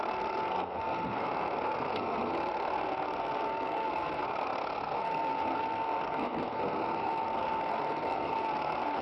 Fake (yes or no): yes